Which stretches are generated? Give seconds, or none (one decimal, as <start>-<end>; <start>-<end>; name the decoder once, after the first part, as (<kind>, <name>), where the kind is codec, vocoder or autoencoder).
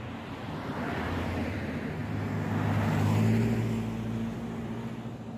none